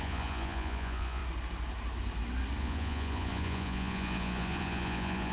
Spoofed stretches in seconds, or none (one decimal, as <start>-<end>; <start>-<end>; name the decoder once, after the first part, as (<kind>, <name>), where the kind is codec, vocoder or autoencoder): 0.0-1.2 (vocoder, Vocos); 2.6-5.3